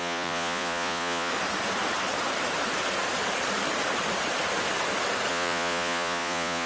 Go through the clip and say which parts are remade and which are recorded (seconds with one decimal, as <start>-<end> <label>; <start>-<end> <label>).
0.0-1.3 remade; 1.3-5.3 recorded; 5.3-6.7 remade